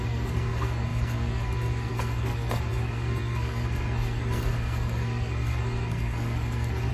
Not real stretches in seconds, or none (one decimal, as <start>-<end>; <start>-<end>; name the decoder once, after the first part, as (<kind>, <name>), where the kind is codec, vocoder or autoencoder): 0.0-6.9 (codec, SNAC)